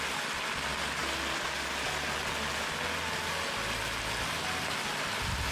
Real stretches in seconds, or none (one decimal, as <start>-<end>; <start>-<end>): 0.0-5.5